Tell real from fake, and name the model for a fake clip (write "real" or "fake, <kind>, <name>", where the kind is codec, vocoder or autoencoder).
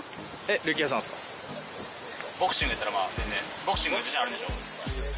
real